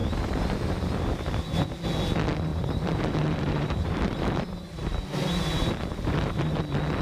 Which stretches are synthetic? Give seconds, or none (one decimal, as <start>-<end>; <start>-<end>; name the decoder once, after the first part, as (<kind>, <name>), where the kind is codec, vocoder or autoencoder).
0.0-1.7 (vocoder, BigVGAN v2); 2.5-6.6